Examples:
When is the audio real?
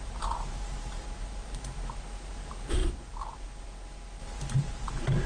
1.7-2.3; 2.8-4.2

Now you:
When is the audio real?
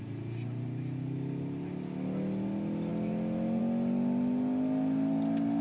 0.0-5.6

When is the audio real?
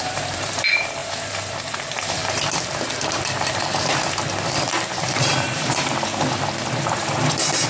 2.2-5.0; 6.1-6.8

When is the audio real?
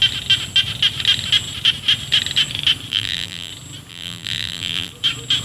0.0-2.9; 3.5-3.9; 4.9-5.4